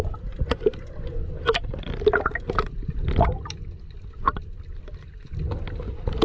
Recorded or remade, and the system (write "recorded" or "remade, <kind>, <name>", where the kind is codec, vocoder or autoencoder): recorded